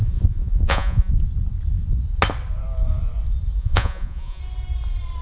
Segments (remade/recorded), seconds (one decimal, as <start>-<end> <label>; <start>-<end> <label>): 0.0-1.1 remade; 1.1-3.6 recorded; 3.6-4.4 remade; 4.4-5.2 recorded